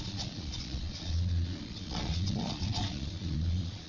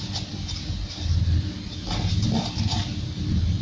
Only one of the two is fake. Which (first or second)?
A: first